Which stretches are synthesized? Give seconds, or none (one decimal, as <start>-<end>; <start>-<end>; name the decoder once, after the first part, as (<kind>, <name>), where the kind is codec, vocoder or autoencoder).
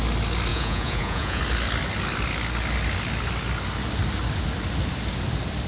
0.5-1.4 (vocoder, Vocos)